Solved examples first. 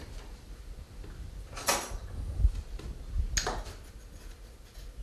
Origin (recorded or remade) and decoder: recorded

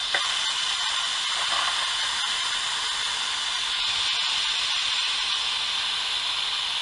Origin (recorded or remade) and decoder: recorded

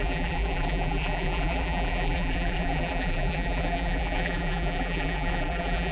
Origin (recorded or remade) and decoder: remade, vocoder, BigVGAN v2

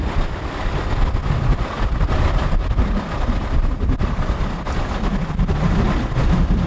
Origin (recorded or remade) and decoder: recorded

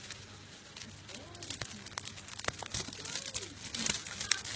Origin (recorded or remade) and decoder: recorded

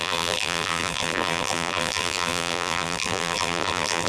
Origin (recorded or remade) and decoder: remade, vocoder, BigVGAN v2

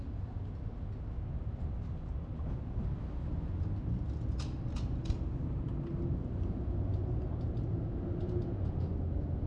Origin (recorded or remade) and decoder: recorded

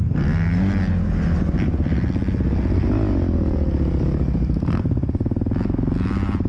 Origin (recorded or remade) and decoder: recorded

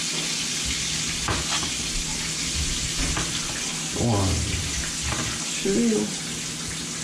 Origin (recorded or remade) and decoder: recorded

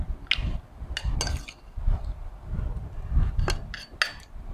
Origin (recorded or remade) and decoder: recorded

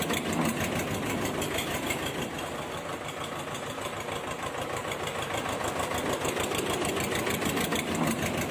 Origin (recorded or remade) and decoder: recorded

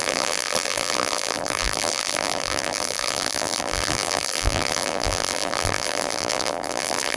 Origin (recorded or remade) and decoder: remade, vocoder, BigVGAN v2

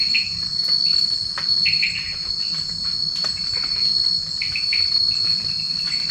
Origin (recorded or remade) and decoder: recorded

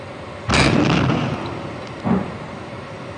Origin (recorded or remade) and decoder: recorded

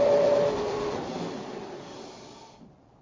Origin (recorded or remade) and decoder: recorded